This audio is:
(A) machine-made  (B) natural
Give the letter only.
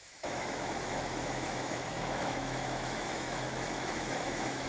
A